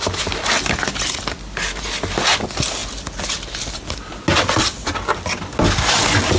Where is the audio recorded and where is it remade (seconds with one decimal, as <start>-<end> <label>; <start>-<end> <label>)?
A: 0.0-6.4 recorded